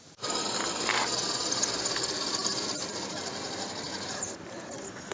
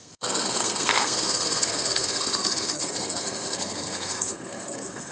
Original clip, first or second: first